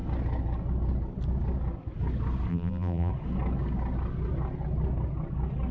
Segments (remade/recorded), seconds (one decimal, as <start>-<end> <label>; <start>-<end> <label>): 0.0-2.5 recorded; 2.5-3.1 remade; 3.1-5.7 recorded